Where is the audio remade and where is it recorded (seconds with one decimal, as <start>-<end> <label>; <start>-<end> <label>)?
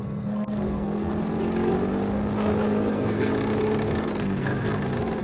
0.0-1.1 remade; 1.1-2.9 recorded; 2.9-3.3 remade; 3.3-4.0 recorded; 4.0-4.5 remade; 4.5-5.2 recorded